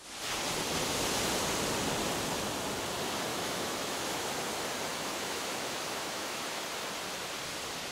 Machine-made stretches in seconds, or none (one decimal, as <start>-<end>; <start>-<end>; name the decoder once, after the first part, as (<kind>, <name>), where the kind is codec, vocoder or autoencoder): 3.3-4.3 (autoencoder, DAC-VAE); 4.9-6.6